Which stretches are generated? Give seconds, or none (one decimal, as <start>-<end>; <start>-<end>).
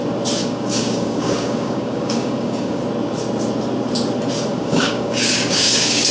0.4-2.8; 4.5-6.1